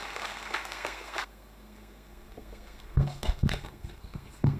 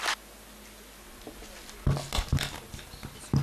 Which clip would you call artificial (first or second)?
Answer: first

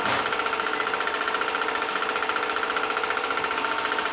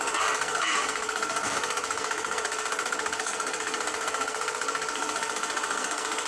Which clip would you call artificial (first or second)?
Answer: second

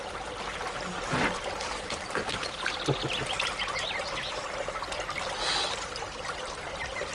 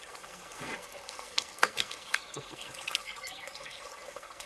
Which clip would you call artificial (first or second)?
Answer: second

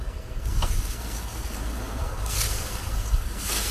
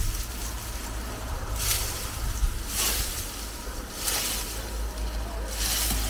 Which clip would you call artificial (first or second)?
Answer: first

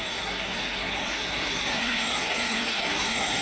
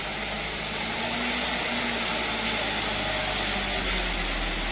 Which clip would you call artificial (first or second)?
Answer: first